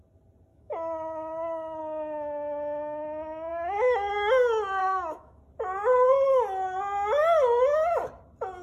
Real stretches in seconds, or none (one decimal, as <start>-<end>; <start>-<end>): 0.0-0.5; 1.8-3.5; 4.1-4.8; 5.4-8.6